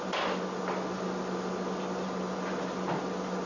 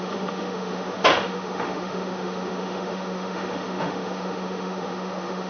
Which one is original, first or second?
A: first